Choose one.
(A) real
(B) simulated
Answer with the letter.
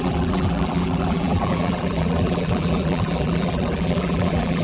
B